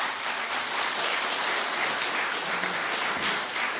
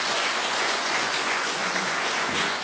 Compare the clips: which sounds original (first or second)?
first